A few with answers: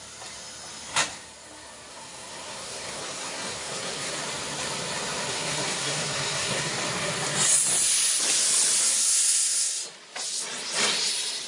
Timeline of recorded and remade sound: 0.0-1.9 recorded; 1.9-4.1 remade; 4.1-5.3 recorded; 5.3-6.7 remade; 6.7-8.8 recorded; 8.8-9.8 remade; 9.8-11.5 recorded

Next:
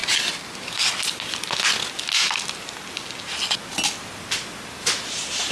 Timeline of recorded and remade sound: 0.0-5.5 recorded

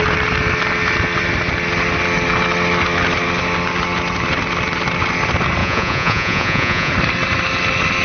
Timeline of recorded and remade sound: 0.0-5.6 recorded; 5.6-6.9 remade; 6.9-8.0 recorded

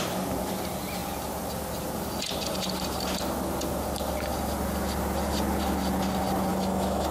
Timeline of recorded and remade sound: 0.0-6.5 recorded; 6.5-7.1 remade

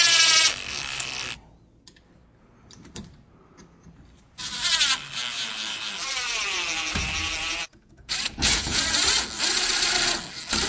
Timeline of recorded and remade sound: 0.0-7.7 recorded; 7.7-8.8 remade; 8.8-10.7 recorded